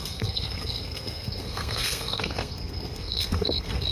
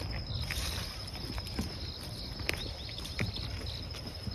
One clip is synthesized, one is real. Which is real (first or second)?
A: second